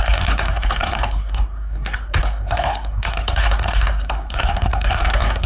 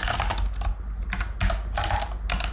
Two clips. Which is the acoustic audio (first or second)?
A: second